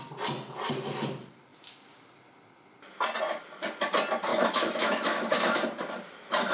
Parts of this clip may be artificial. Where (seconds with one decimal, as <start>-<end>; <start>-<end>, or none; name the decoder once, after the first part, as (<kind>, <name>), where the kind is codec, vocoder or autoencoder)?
4.3-5.6 (autoencoder, DAC-VAE)